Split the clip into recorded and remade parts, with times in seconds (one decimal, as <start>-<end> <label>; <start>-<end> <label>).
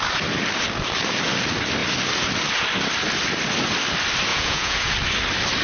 0.0-4.3 recorded; 4.3-4.9 remade; 4.9-5.6 recorded